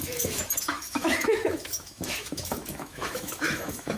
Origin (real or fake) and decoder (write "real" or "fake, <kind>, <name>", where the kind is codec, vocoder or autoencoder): fake, autoencoder, DAC-VAE